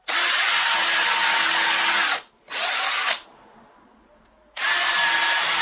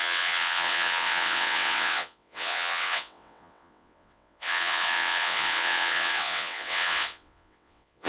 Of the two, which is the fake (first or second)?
second